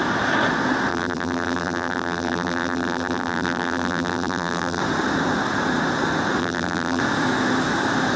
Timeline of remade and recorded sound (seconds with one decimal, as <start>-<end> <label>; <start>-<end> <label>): 0.0-0.9 recorded; 0.9-4.8 remade; 4.8-6.4 recorded; 6.4-7.0 remade; 7.0-8.2 recorded